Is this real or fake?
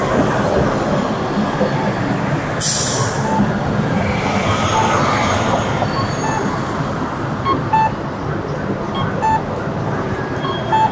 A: real